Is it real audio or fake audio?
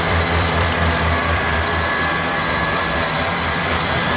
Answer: fake